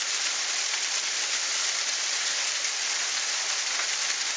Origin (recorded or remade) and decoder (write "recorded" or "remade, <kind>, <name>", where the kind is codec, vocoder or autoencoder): recorded